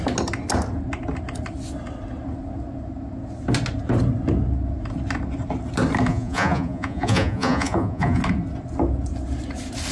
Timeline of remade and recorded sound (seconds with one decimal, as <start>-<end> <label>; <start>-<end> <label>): 0.0-6.1 recorded; 6.1-8.2 remade; 8.2-9.9 recorded